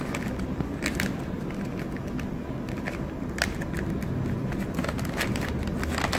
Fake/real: real